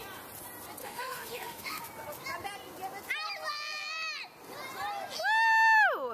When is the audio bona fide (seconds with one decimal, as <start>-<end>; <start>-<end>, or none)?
0.0-0.8; 1.8-6.1